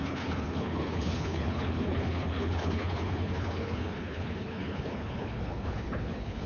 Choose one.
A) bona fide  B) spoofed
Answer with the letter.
B